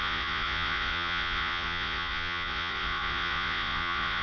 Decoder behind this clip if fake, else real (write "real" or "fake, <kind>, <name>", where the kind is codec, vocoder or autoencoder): fake, vocoder, Vocos